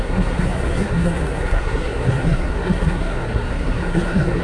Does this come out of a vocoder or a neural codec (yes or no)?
yes